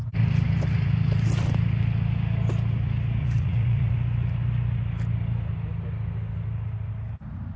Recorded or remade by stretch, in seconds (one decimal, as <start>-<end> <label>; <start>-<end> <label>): 0.0-3.2 recorded; 3.2-3.9 remade; 3.9-7.6 recorded